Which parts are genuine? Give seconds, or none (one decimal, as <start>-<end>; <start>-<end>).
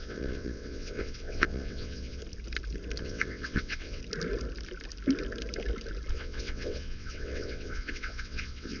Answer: 2.2-3.0; 4.0-6.1